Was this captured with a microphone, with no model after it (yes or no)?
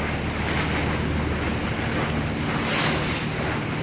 yes